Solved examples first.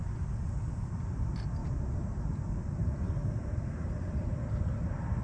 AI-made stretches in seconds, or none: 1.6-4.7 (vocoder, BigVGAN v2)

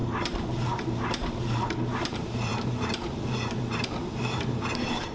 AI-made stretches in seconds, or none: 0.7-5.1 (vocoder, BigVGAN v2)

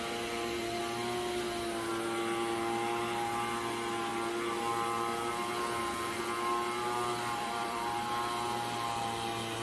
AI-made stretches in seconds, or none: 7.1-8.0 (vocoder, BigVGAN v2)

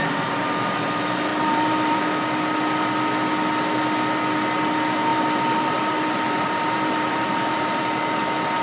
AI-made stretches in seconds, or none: 1.3-2.0 (vocoder, BigVGAN v2); 5.1-7.8

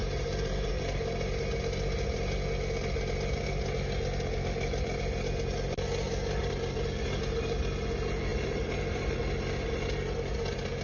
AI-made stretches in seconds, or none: 0.0-0.7 (vocoder, BigVGAN v2); 8.3-9.2

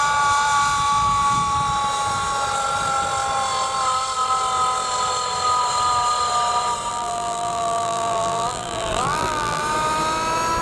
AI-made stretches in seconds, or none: 6.9-9.6 (vocoder, BigVGAN v2)